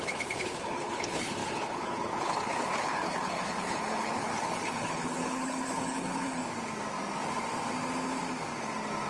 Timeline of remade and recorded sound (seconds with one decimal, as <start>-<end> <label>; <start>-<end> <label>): 0.0-6.4 remade; 6.4-9.1 recorded